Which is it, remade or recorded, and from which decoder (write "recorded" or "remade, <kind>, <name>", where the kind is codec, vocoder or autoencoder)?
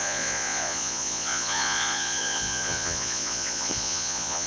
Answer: remade, vocoder, Vocos